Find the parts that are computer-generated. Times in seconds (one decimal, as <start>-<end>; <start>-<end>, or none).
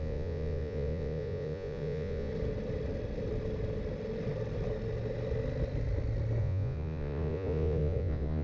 0.0-2.3; 6.4-8.4